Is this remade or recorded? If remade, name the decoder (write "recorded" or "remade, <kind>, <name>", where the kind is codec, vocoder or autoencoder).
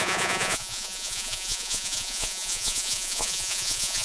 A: remade, vocoder, Vocos